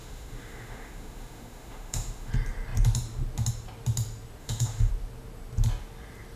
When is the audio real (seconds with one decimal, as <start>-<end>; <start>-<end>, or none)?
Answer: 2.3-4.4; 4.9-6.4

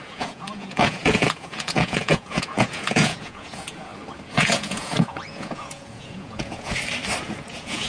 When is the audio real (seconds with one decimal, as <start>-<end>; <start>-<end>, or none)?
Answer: 3.9-4.4; 6.7-7.2

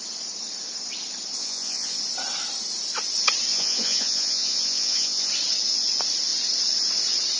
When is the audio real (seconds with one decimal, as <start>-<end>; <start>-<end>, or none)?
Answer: 0.0-1.4; 2.0-3.5; 5.3-7.4

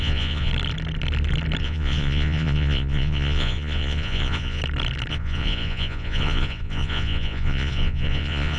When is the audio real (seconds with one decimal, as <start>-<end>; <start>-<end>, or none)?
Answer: 0.5-1.6; 4.6-5.1